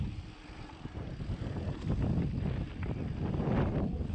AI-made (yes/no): no